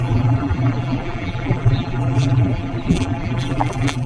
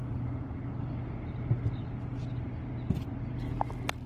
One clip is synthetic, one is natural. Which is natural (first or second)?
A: second